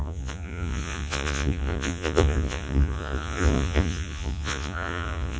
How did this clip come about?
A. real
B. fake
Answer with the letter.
B